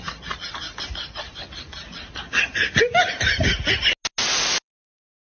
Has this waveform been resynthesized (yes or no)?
no